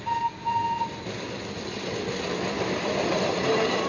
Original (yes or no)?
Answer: yes